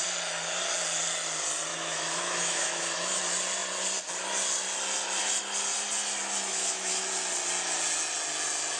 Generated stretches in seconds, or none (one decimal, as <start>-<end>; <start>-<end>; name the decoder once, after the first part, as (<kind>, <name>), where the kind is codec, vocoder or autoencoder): 1.7-3.2 (autoencoder, DAC-VAE); 6.5-7.0